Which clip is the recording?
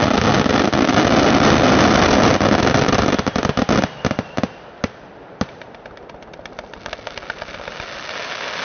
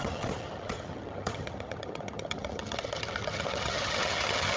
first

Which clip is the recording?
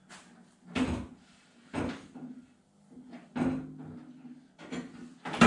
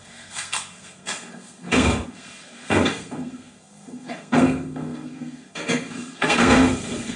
first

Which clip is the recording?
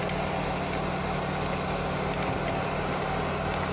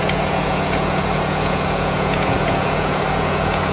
first